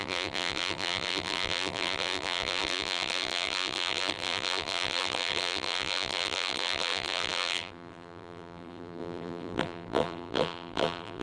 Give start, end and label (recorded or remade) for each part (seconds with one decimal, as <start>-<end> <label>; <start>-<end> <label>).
0.0-11.2 remade